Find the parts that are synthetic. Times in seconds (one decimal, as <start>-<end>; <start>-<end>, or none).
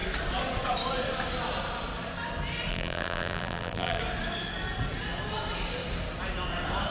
2.7-4.0